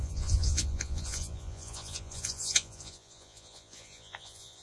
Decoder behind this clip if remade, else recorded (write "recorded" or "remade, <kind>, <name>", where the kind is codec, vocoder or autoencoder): remade, vocoder, Vocos